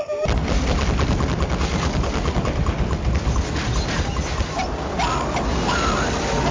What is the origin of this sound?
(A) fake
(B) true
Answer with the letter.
B